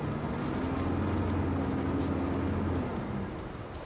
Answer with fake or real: real